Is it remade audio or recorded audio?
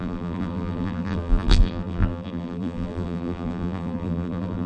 remade